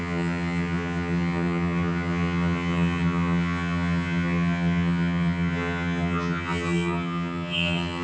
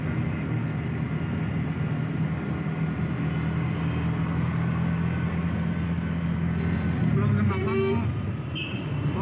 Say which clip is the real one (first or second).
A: second